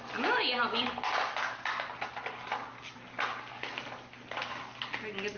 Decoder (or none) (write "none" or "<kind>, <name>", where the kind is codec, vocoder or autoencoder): none